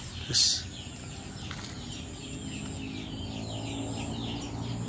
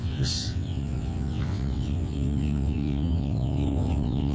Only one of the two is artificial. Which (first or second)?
second